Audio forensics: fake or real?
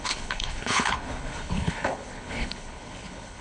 fake